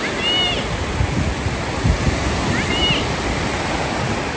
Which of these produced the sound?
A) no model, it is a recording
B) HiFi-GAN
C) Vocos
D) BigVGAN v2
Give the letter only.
A